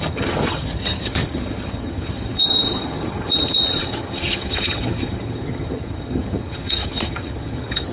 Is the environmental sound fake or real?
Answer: fake